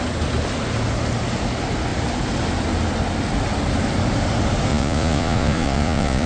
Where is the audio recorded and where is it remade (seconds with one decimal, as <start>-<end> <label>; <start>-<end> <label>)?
0.0-4.7 recorded; 4.7-6.3 remade

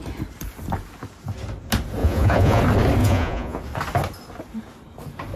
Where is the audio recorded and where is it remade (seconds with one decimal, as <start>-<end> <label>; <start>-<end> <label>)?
0.0-2.0 recorded; 2.0-2.6 remade; 2.6-3.0 recorded; 3.0-3.6 remade; 3.6-5.4 recorded

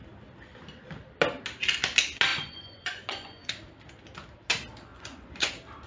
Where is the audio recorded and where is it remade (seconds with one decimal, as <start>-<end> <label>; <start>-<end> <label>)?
0.0-2.3 recorded; 2.3-3.5 remade; 3.5-4.9 recorded; 4.9-5.5 remade; 5.5-5.9 recorded

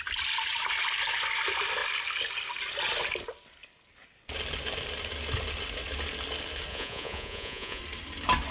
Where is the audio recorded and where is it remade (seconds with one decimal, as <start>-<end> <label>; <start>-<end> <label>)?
0.0-6.7 recorded; 6.7-7.8 remade; 7.8-8.5 recorded

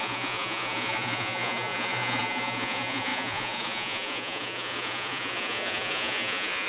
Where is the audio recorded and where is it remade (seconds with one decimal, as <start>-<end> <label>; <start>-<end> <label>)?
0.0-6.7 remade